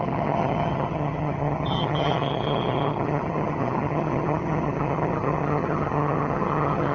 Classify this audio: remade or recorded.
remade